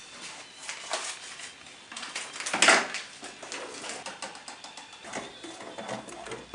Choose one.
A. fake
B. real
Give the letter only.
B